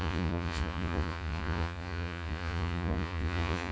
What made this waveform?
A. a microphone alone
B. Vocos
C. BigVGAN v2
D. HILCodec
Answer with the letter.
B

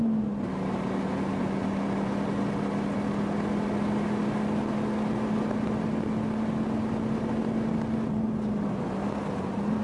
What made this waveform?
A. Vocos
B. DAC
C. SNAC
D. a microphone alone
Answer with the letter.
D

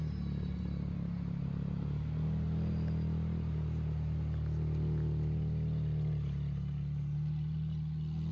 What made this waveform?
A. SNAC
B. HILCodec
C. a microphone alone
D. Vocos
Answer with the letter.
C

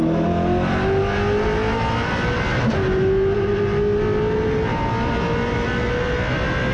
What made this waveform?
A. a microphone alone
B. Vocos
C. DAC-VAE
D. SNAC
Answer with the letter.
A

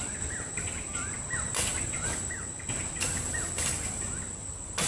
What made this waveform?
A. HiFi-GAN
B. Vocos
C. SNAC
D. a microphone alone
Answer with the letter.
D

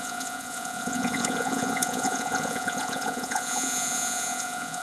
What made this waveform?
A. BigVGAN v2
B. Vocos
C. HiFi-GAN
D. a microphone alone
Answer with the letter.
B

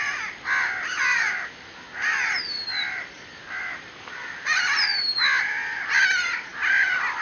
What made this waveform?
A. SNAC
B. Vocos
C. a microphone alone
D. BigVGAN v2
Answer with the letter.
C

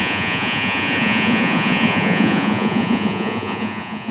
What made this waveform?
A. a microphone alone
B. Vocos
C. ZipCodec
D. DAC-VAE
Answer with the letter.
B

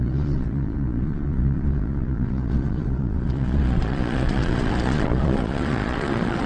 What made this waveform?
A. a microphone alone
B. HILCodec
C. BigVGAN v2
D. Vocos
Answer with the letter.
D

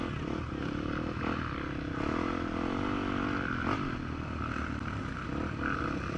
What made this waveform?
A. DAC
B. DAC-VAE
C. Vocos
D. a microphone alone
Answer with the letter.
D